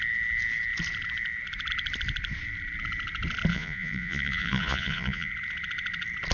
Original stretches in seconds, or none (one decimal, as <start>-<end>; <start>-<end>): 0.0-3.5; 5.3-6.3